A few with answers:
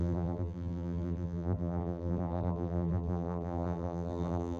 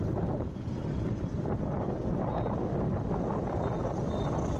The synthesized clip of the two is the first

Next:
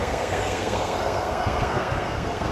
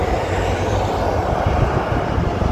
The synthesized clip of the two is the first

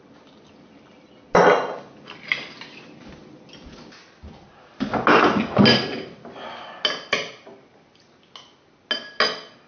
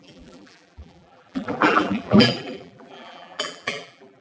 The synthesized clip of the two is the second